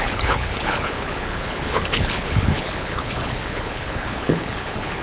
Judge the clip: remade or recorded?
remade